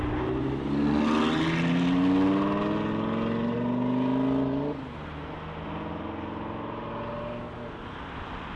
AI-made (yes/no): no